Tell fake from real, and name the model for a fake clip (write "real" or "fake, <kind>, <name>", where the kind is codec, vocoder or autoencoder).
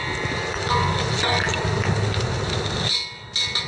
real